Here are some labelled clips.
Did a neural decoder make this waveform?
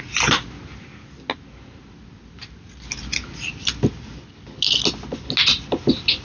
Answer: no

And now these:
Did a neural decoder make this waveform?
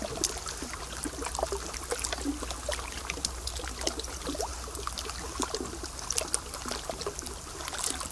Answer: no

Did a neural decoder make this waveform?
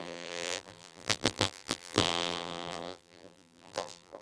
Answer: yes